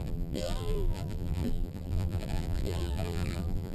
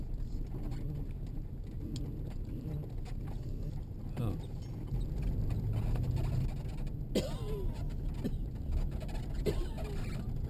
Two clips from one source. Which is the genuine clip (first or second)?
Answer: second